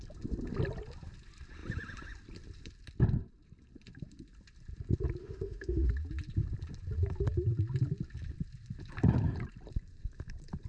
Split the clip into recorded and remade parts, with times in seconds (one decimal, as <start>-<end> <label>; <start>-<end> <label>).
0.0-5.2 recorded; 5.2-5.9 remade; 5.9-10.7 recorded